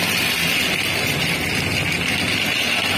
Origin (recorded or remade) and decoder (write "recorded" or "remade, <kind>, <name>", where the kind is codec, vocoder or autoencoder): recorded